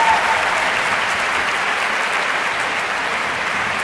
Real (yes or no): yes